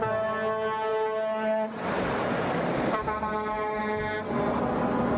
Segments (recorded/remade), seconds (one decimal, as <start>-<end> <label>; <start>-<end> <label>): 0.0-0.9 recorded; 0.9-3.8 remade; 3.8-5.2 recorded